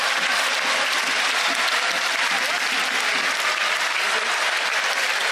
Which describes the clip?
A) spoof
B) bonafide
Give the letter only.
B